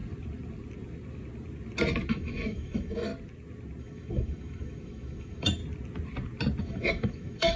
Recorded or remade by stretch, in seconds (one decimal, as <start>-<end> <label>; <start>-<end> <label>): 0.0-2.1 recorded; 2.1-3.1 remade; 3.1-3.8 recorded; 3.8-5.6 remade; 5.6-6.6 recorded; 6.6-7.6 remade